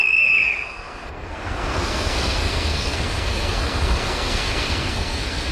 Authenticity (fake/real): fake